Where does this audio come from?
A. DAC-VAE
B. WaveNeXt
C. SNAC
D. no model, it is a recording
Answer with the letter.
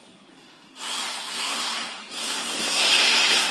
C